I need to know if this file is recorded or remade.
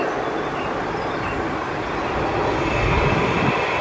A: recorded